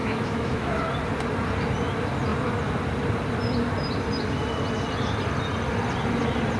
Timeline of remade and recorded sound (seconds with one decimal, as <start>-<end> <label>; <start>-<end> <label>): 0.0-0.8 remade; 0.8-6.6 recorded